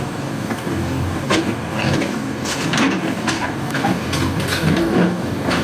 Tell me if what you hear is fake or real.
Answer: fake